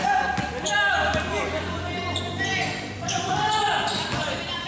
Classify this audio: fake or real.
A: real